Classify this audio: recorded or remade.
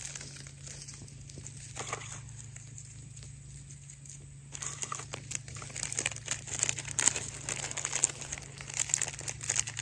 recorded